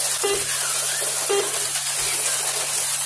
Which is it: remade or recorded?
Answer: recorded